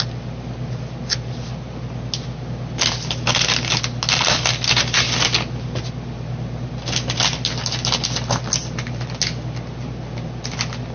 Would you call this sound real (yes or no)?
yes